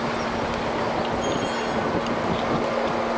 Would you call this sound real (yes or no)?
yes